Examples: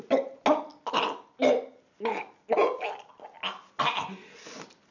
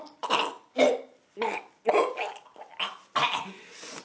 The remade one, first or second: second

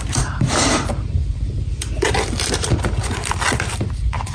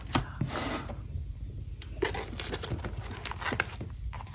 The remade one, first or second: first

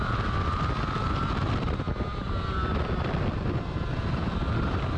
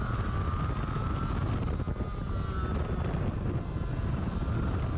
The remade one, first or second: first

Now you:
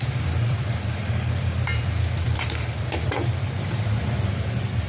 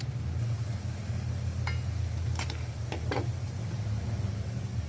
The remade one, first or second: first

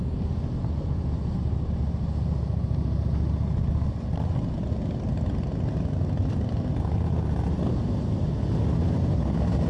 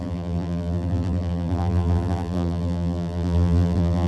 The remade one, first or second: second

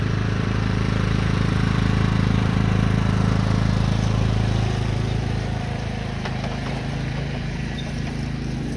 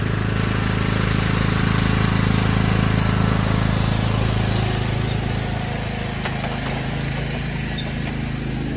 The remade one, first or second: first